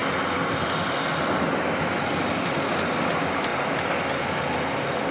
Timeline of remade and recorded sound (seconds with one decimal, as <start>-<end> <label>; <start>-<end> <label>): 0.0-5.1 recorded